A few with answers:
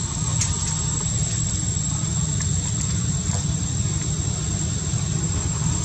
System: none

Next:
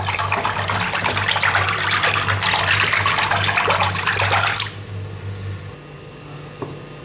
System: none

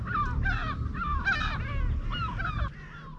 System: none